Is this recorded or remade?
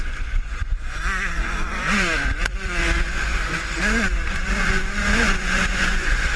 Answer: remade